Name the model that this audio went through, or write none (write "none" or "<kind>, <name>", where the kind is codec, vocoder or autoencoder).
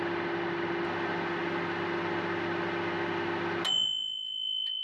none